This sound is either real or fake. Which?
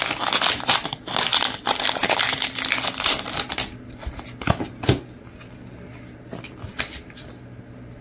real